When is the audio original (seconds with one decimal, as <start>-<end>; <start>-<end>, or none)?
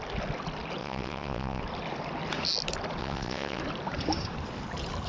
0.0-0.8; 1.6-3.0; 3.6-5.1